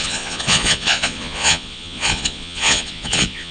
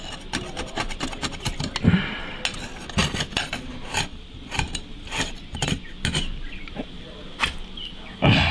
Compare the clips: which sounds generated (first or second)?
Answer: first